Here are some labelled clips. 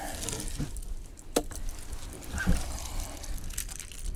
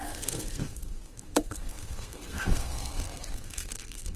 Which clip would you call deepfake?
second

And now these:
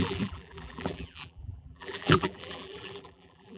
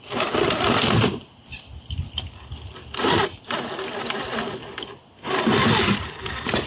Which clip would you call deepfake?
first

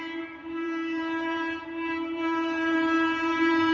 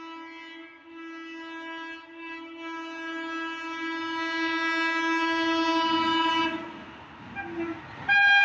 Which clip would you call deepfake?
first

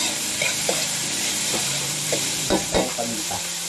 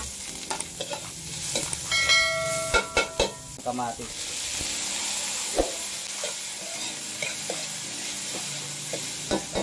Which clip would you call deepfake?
first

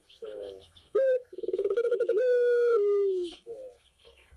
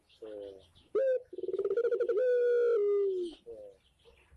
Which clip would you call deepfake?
first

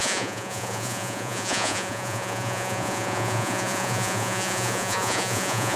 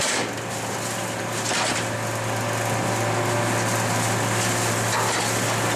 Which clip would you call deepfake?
first